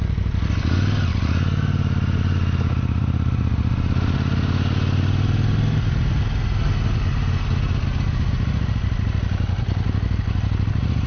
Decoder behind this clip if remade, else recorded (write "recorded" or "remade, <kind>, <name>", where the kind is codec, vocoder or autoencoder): recorded